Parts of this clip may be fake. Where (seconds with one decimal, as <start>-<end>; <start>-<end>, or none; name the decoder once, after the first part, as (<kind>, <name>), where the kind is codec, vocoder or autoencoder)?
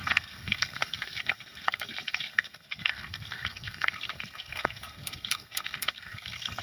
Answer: 0.0-6.6 (codec, SNAC)